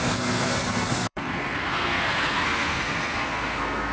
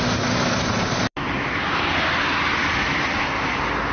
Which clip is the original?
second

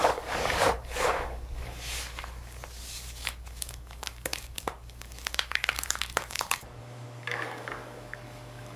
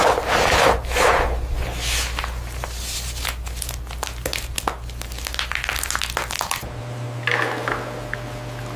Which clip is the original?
second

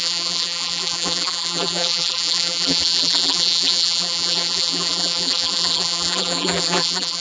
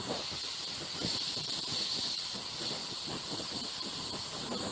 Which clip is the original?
second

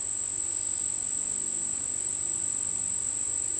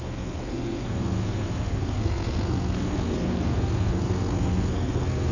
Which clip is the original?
first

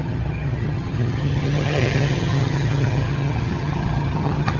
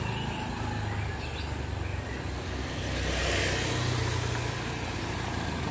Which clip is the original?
second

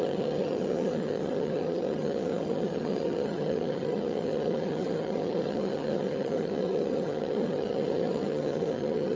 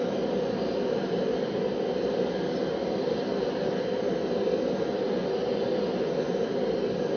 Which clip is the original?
second